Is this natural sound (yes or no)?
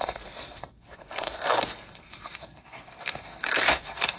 no